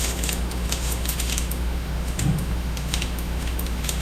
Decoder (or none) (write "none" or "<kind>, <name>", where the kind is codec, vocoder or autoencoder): autoencoder, DAC-VAE